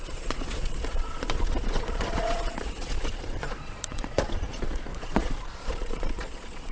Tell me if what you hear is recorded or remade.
remade